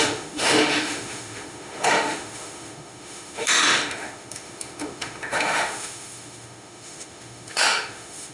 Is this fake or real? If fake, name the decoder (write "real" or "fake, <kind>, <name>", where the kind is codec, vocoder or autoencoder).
fake, autoencoder, DAC-VAE